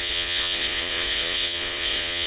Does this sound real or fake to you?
fake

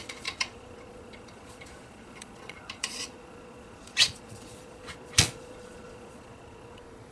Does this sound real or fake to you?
fake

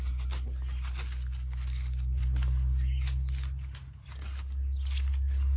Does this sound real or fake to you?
real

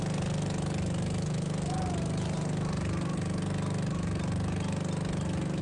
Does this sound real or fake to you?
real